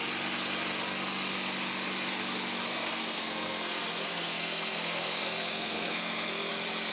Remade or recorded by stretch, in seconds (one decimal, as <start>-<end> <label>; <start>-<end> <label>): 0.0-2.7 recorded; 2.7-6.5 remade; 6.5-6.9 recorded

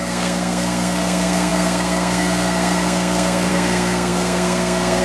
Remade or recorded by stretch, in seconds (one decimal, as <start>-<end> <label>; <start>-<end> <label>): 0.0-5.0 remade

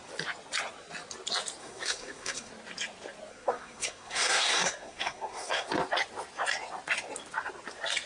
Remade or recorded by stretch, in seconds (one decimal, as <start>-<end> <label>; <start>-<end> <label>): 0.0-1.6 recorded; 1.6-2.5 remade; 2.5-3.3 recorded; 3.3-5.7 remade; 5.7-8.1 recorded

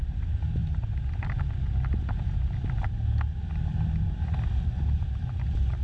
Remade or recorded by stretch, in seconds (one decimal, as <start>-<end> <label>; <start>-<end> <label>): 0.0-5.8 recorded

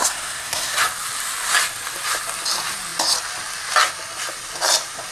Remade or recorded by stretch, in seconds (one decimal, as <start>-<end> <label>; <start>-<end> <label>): 0.0-0.8 remade; 0.8-5.1 recorded

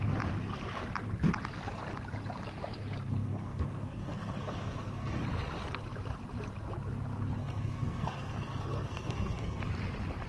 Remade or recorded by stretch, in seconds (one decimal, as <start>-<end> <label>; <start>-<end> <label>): 0.0-3.1 recorded; 3.1-5.2 remade; 5.2-7.4 recorded; 7.4-9.7 remade; 9.7-10.3 recorded

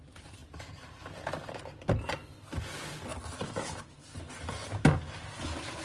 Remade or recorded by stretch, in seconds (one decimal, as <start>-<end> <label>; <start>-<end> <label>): 0.0-5.8 recorded